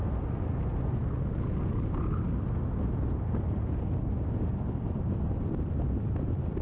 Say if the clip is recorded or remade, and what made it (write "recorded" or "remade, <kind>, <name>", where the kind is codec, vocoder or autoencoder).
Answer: recorded